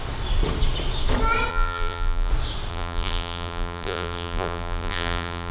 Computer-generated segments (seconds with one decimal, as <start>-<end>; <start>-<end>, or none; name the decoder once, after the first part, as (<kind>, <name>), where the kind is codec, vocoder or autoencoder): 1.5-2.3 (vocoder, BigVGAN v2); 2.7-5.5